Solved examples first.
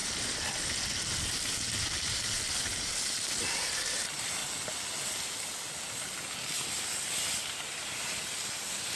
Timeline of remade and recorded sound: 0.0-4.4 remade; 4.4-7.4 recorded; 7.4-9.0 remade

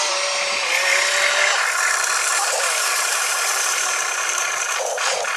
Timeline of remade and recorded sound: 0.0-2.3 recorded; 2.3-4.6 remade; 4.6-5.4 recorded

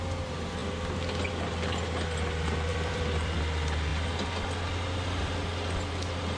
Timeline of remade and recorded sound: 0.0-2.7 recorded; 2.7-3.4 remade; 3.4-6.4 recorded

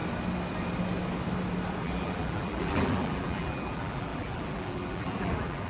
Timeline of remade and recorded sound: 0.0-1.8 recorded; 1.8-5.7 remade

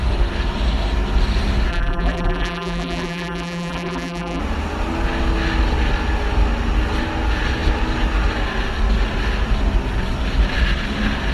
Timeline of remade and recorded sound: 0.0-1.7 recorded; 1.7-4.4 remade; 4.4-11.3 recorded